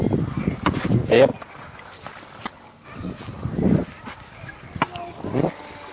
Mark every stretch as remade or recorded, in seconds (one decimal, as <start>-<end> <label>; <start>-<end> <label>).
0.0-5.9 recorded